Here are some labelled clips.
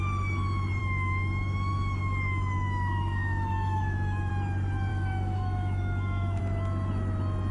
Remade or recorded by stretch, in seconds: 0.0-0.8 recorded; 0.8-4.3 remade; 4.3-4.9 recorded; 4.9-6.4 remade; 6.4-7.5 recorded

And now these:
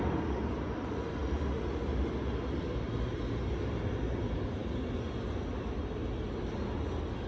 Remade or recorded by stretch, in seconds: 0.0-7.3 recorded

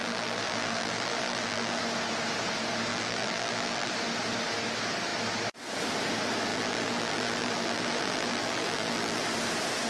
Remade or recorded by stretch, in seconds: 0.0-1.8 remade; 1.8-2.9 recorded; 2.9-3.9 remade; 3.9-6.5 recorded; 6.5-9.2 remade; 9.2-9.9 recorded

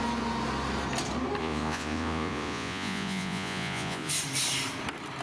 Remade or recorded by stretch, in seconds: 0.0-1.4 recorded; 1.4-4.1 remade; 4.1-5.2 recorded

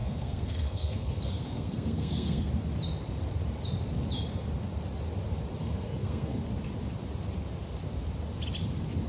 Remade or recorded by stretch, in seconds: 0.0-2.5 remade; 2.5-5.6 recorded; 5.6-6.4 remade; 6.4-9.1 recorded

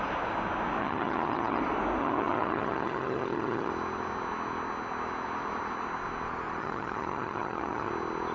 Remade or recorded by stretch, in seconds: 0.0-0.8 recorded; 0.8-1.6 remade; 1.6-2.0 recorded; 2.0-3.7 remade; 3.7-6.6 recorded; 6.6-7.9 remade; 7.9-8.3 recorded